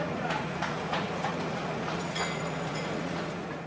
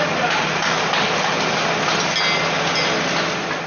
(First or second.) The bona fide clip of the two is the second